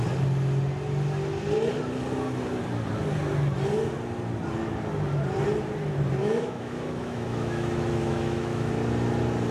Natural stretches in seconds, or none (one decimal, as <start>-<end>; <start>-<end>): 0.0-6.2; 8.7-9.5